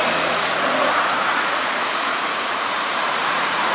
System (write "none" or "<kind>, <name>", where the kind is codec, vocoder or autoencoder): vocoder, Vocos